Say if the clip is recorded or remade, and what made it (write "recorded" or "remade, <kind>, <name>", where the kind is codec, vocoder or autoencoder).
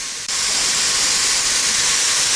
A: remade, vocoder, BigVGAN v2